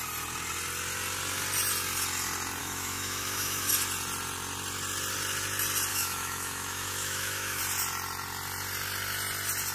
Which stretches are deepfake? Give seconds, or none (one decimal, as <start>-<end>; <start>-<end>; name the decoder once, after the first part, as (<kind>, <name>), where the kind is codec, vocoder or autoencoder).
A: 2.6-3.7 (autoencoder, DAC-VAE); 5.9-7.6